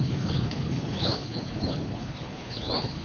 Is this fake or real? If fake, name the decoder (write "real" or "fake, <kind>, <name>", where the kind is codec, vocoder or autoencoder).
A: fake, codec, HILCodec